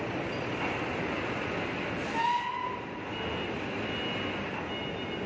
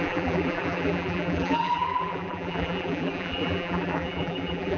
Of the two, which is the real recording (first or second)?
first